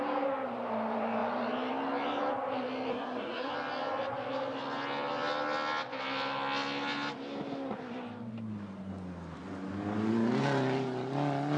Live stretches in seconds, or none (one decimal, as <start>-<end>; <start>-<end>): 0.0-2.9; 3.5-11.6

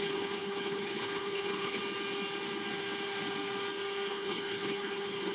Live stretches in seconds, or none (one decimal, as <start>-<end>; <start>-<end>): 1.8-4.1

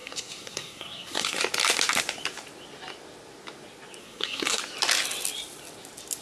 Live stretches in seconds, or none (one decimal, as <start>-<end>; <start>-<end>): 1.4-4.0; 4.6-6.2

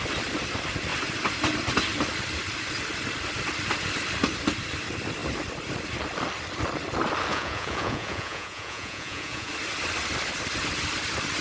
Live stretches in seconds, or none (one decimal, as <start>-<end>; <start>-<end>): 0.0-7.3; 9.5-11.4

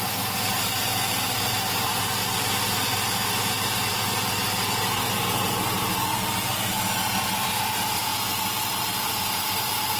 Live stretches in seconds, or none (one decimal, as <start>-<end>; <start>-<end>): 0.0-10.0